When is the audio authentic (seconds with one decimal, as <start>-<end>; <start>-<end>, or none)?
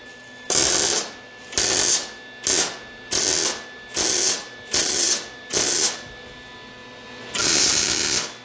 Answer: 0.0-8.4